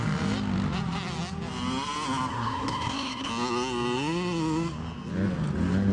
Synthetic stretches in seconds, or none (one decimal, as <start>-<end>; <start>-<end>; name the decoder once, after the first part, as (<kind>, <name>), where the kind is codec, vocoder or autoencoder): 2.3-3.3 (codec, SNAC)